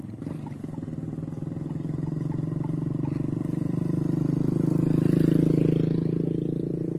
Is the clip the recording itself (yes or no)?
yes